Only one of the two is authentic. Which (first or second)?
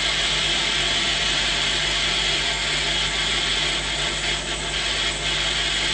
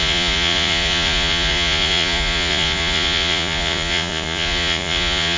first